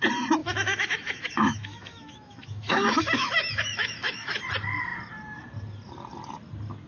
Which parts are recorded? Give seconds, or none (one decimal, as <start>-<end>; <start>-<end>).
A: 0.0-0.4; 4.4-6.9